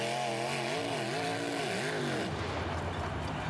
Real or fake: real